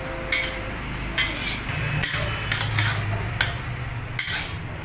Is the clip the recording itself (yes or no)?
yes